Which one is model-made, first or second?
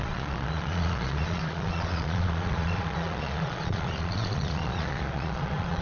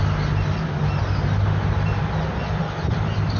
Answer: first